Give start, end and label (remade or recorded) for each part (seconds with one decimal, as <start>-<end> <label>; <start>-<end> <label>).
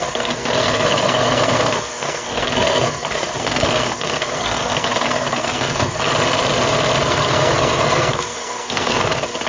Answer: 0.0-6.1 remade; 6.1-7.0 recorded; 7.0-9.5 remade